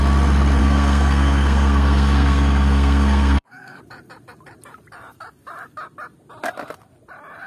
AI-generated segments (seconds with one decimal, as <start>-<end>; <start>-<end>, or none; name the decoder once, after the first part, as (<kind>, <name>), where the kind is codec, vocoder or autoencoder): 0.6-3.8 (codec, SNAC)